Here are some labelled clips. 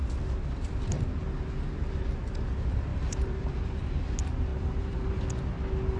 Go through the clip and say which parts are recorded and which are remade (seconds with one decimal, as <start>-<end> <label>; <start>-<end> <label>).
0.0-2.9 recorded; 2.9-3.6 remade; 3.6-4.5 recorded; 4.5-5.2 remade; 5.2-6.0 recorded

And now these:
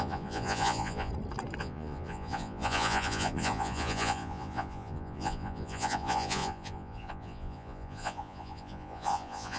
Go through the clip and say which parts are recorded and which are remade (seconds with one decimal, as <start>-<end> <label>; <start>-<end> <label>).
0.0-1.1 remade; 1.1-1.6 recorded; 1.6-9.6 remade

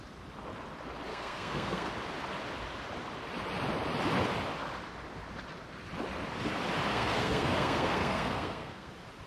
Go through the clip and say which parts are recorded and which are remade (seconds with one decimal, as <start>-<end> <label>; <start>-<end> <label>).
0.0-1.1 recorded; 1.1-1.9 remade; 1.9-6.9 recorded; 6.9-8.9 remade; 8.9-9.3 recorded

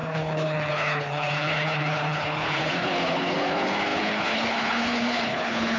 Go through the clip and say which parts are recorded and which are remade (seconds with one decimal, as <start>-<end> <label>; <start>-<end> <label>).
0.0-5.8 remade

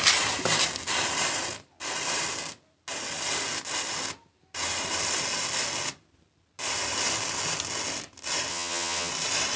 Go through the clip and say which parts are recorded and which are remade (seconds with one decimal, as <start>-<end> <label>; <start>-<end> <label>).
0.0-8.5 recorded; 8.5-9.1 remade; 9.1-9.6 recorded

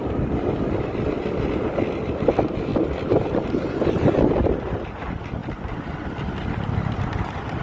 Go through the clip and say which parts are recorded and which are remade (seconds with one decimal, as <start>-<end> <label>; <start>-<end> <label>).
0.0-5.4 recorded; 5.4-6.3 remade; 6.3-7.6 recorded